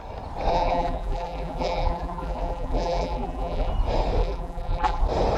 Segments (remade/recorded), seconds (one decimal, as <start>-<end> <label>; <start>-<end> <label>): 0.0-0.5 recorded; 0.5-3.7 remade; 3.7-4.2 recorded; 4.2-5.0 remade; 5.0-5.4 recorded